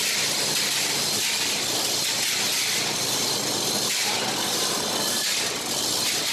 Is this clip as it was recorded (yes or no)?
yes